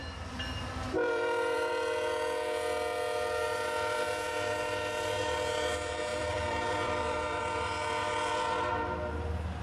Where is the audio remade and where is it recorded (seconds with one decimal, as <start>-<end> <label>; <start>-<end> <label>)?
0.0-1.7 remade; 1.7-6.1 recorded; 6.1-7.4 remade; 7.4-9.6 recorded

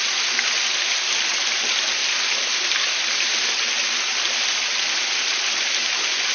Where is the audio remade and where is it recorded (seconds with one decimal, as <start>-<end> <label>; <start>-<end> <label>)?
0.0-2.0 recorded; 2.0-3.7 remade; 3.7-6.3 recorded

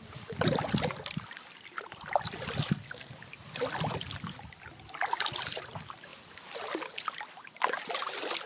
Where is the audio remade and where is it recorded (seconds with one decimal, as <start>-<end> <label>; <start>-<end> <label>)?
0.0-8.5 recorded

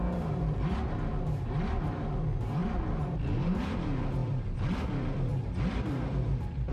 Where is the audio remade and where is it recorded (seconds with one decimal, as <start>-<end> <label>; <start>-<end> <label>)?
0.0-6.7 recorded

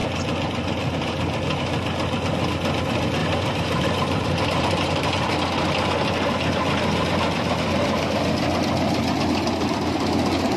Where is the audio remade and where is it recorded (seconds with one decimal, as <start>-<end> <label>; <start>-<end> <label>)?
0.0-3.2 recorded; 3.2-5.3 remade; 5.3-10.6 recorded